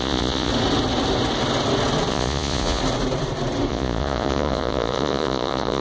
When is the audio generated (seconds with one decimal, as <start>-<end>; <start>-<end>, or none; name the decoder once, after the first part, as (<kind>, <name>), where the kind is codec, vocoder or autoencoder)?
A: 0.0-0.5 (vocoder, Vocos); 2.1-2.8; 3.7-5.8